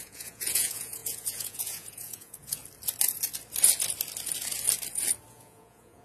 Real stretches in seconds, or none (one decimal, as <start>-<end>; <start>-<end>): 2.6-5.3